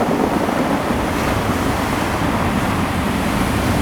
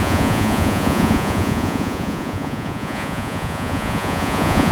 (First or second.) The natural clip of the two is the first